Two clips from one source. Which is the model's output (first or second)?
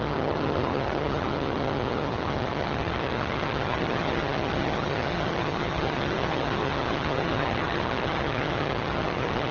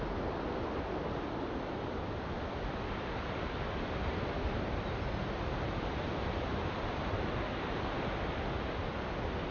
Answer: first